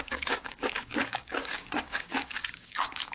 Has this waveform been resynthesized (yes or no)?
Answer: yes